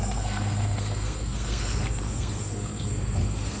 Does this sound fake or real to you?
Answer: fake